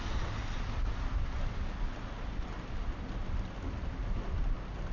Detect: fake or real real